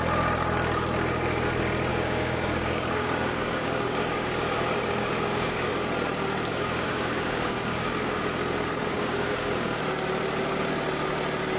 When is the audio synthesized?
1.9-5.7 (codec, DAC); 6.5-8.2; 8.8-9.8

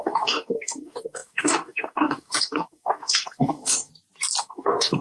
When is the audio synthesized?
0.0-3.9 (codec, DAC); 4.4-5.0